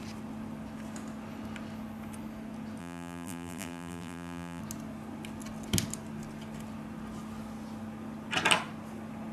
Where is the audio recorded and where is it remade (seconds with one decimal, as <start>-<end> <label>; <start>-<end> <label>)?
0.0-2.8 recorded; 2.8-4.6 remade; 4.6-9.3 recorded